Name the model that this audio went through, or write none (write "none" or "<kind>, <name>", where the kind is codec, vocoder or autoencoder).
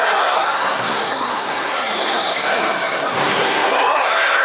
codec, SNAC